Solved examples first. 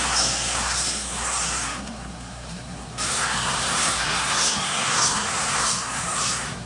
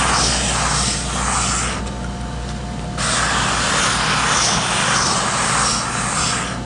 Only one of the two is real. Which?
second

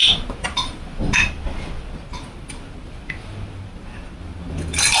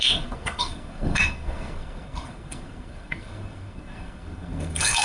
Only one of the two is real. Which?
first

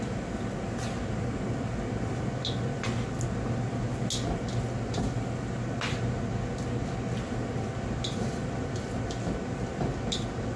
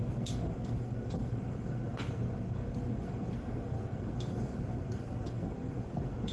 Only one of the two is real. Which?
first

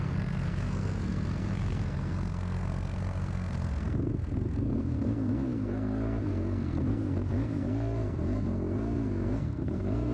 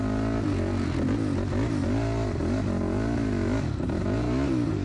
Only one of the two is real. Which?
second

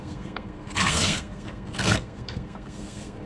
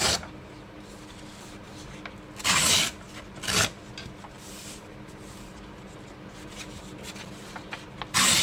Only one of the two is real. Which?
second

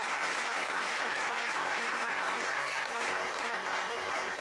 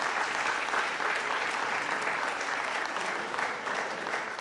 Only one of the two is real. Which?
second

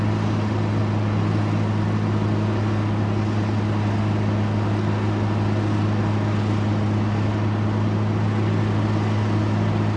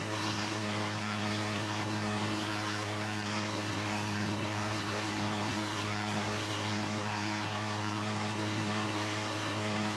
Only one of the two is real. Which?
first